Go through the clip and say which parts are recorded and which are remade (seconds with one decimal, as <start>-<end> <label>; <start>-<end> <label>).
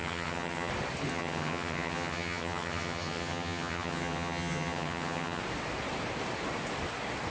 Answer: 0.0-0.7 remade; 0.7-1.1 recorded; 1.1-5.4 remade; 5.4-7.3 recorded